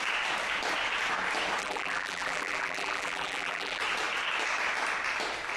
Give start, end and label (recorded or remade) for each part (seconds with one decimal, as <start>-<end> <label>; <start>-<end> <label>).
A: 0.0-1.6 recorded; 1.6-3.8 remade; 3.8-5.6 recorded